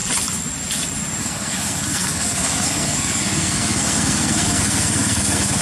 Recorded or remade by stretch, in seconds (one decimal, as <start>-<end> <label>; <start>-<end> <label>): 0.0-1.2 recorded; 1.2-5.6 remade